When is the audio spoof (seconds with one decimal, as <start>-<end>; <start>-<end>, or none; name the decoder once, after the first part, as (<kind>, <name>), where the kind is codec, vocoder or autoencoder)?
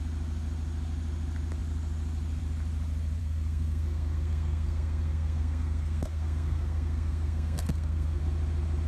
3.2-8.2 (codec, SNAC)